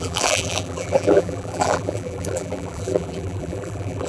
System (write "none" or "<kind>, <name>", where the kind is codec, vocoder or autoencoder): vocoder, BigVGAN v2